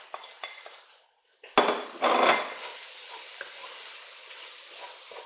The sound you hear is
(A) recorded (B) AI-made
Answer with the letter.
A